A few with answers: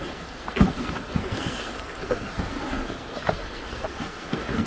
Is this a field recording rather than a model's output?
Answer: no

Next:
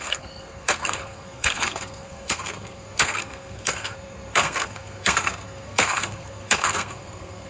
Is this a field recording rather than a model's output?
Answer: no